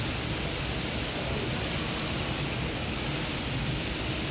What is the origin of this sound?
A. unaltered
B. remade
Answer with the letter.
A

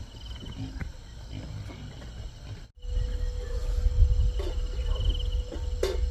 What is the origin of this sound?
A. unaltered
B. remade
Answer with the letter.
A